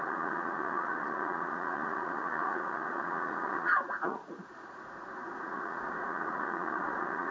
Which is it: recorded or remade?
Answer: remade